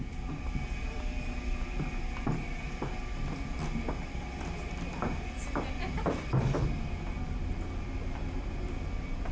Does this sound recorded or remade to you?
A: recorded